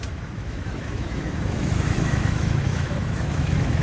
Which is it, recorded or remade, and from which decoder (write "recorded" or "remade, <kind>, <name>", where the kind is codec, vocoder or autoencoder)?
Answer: remade, autoencoder, DAC-VAE